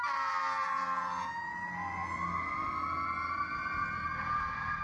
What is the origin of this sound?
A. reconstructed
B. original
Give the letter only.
B